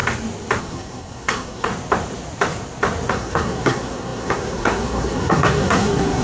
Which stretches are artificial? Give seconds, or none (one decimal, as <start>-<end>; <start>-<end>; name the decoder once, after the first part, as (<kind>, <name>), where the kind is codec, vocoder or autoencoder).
0.6-1.7 (codec, SNAC); 3.1-6.2